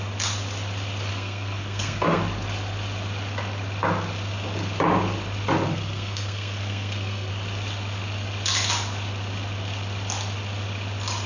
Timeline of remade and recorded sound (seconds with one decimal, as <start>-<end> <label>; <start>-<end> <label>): 0.0-1.1 recorded; 1.1-2.2 remade; 2.2-5.7 recorded; 5.7-7.3 remade; 7.3-11.3 recorded